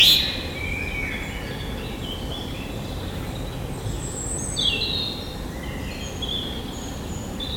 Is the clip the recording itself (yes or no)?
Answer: yes